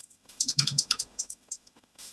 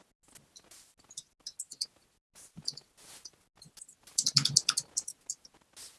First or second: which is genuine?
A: second